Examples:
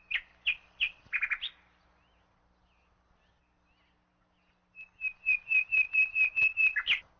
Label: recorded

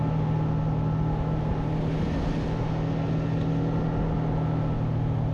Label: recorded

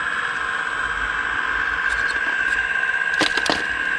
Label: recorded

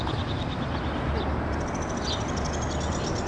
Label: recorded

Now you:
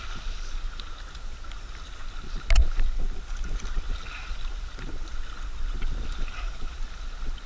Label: recorded